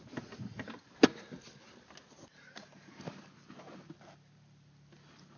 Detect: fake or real real